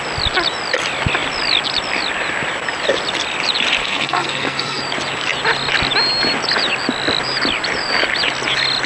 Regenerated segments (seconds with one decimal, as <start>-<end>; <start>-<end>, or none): 3.8-4.8